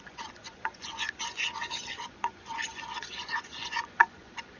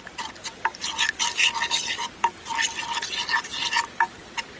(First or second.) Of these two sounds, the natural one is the second